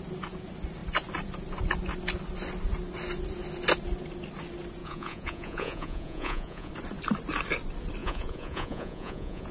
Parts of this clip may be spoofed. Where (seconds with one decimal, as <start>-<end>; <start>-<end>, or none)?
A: 4.8-6.7; 8.0-9.5